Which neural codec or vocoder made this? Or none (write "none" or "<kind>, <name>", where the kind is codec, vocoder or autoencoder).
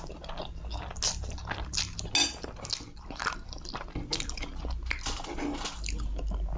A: none